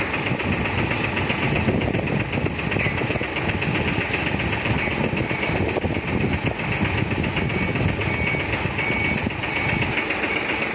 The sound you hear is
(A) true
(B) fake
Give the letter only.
A